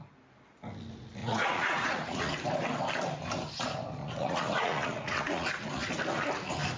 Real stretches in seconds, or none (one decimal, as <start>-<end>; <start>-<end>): 0.0-1.2; 2.3-4.0; 5.9-6.8